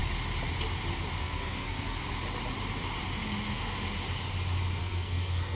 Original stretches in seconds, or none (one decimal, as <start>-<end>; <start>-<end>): 0.0-1.2; 2.0-4.8